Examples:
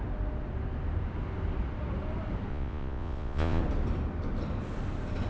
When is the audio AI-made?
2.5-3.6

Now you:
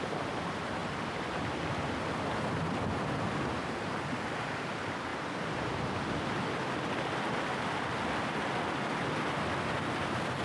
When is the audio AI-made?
5.1-6.3

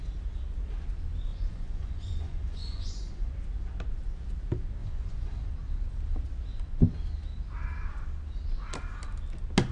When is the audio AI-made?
1.3-3.3; 4.8-5.5

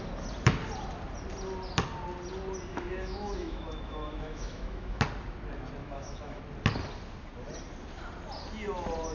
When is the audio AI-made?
2.7-5.0; 5.8-6.4

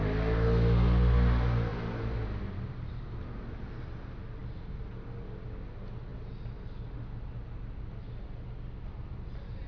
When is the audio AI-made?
none